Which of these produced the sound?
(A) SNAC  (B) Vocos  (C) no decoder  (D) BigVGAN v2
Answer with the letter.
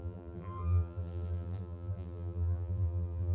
D